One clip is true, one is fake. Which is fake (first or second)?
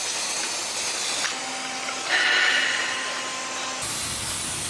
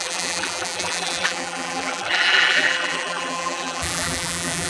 second